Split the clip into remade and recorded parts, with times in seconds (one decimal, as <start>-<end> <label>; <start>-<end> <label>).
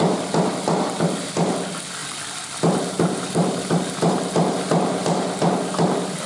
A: 0.0-6.3 recorded